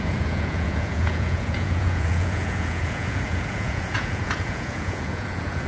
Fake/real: fake